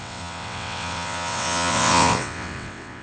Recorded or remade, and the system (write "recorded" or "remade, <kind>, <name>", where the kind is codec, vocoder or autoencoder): remade, vocoder, WaveNeXt